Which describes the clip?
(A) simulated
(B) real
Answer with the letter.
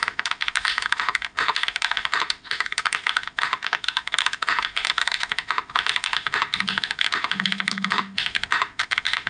A